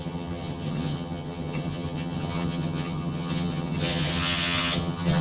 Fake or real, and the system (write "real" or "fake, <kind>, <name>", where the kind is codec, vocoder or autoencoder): fake, vocoder, HiFi-GAN